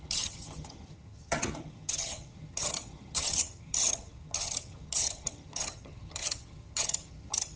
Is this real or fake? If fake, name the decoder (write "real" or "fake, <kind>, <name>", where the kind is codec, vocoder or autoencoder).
fake, vocoder, HiFi-GAN